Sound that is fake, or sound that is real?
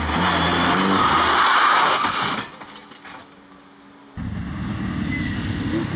real